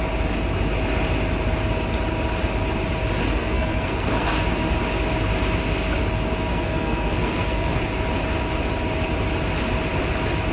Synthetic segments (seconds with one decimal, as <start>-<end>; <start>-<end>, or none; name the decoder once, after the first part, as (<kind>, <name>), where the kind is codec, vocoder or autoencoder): 3.2-4.4 (codec, SNAC); 6.5-7.8